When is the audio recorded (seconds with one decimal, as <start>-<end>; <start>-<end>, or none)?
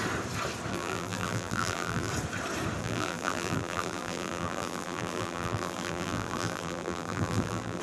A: 0.0-0.7; 2.1-2.8